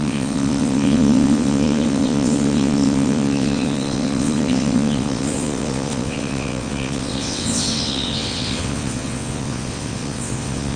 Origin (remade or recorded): remade